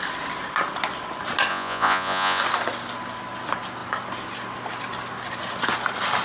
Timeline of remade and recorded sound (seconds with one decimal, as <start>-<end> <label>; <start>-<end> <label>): 0.0-1.5 recorded; 1.5-2.4 remade; 2.4-6.2 recorded